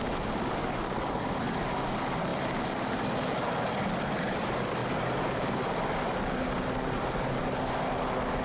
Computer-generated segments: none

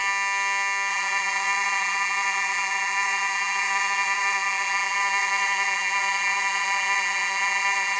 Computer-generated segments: 0.9-8.0 (vocoder, Vocos)